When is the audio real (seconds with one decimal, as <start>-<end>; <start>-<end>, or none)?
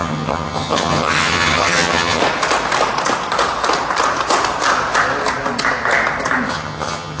2.2-6.5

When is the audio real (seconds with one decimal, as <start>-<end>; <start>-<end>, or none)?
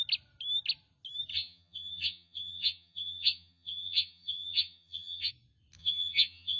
0.0-1.3; 5.3-5.8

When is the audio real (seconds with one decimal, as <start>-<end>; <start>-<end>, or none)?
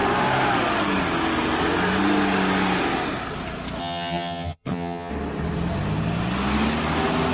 0.0-3.8; 5.1-7.3